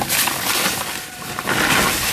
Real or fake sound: real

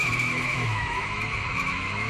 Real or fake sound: fake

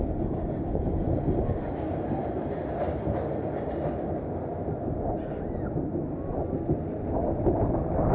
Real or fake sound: real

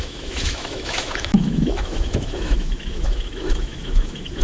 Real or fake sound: fake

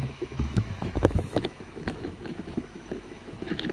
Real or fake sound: fake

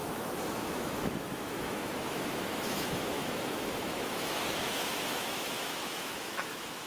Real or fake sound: fake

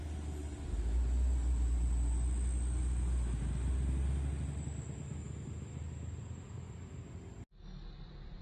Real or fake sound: real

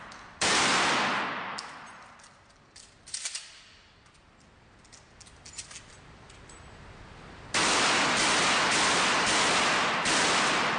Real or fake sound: real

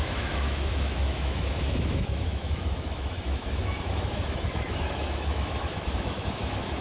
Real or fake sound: fake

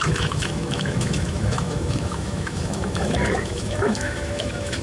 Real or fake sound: fake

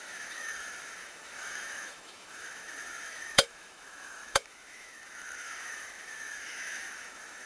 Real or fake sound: fake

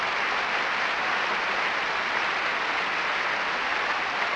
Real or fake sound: real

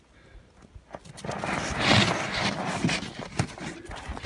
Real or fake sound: real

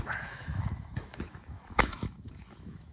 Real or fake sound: fake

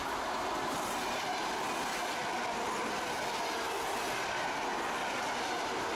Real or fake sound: real